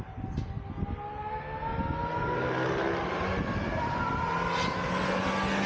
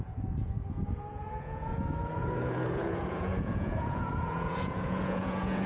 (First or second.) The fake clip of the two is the second